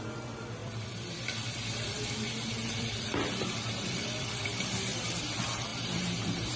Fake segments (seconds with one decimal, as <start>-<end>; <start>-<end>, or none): 0.6-2.1; 2.6-5.2; 5.7-6.6